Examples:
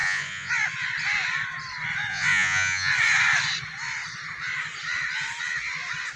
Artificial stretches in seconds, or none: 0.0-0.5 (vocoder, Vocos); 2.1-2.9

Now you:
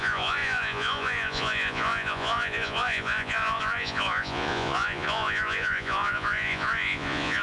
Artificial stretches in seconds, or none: 0.0-7.4 (vocoder, Vocos)

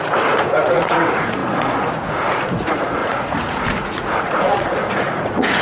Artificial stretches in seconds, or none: 0.0-5.6 (vocoder, Vocos)

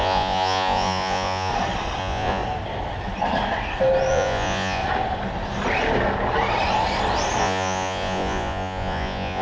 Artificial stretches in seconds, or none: 0.0-1.5 (vocoder, Vocos); 2.0-2.4; 4.1-4.8; 7.4-9.4

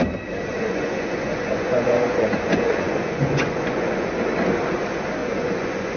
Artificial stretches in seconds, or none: 0.5-4.1 (vocoder, Vocos); 5.2-6.0

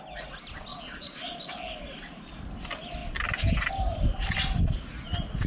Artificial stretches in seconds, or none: 0.7-1.4 (vocoder, Vocos)

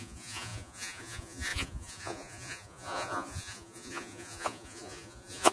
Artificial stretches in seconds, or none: 0.0-5.5 (vocoder, Vocos)

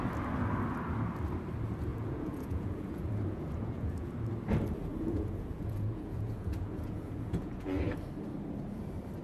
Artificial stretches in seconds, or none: 1.9-4.3 (vocoder, Vocos); 4.9-7.7